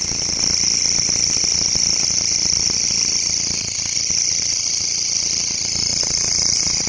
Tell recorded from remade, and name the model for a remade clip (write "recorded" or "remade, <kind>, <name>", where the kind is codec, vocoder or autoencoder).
recorded